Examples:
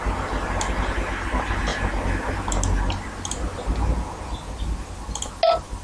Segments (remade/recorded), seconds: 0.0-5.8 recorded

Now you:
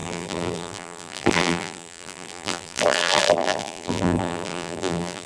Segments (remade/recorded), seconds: 0.0-5.3 remade

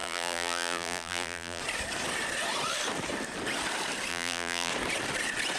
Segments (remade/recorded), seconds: 0.0-1.6 remade; 1.6-4.1 recorded; 4.1-4.7 remade; 4.7-5.6 recorded

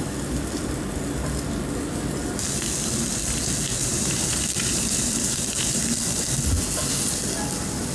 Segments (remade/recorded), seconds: 0.0-3.8 recorded; 3.8-5.8 remade; 5.8-7.9 recorded

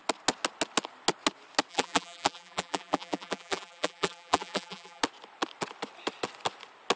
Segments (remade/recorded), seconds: 0.0-1.7 recorded; 1.7-5.0 remade; 5.0-7.0 recorded

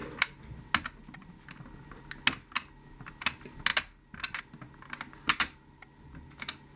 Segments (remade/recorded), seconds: 0.0-6.8 recorded

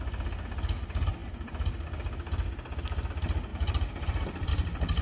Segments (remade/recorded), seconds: 0.0-3.5 recorded; 3.5-4.5 remade; 4.5-5.0 recorded